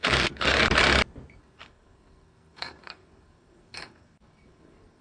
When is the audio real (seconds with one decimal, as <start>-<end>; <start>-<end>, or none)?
0.6-1.4